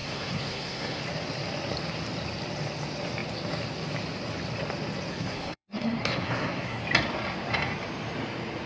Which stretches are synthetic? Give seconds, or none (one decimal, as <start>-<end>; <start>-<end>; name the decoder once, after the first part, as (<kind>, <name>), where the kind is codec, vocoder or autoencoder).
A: 0.0-1.0 (codec, SNAC); 5.1-6.8